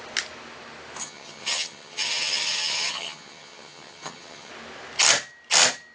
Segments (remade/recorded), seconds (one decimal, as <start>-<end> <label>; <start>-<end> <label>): 0.0-1.0 recorded; 1.0-4.5 remade; 4.5-5.9 recorded